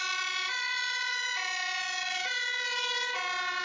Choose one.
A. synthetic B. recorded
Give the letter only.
A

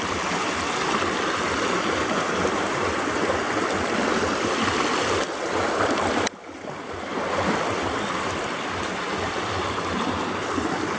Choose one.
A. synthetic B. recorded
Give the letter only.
B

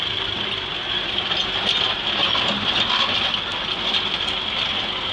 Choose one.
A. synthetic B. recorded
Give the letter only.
B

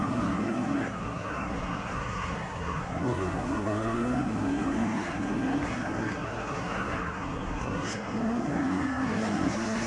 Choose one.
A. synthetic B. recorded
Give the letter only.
A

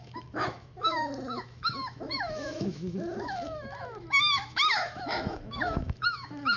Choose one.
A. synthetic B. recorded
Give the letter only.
A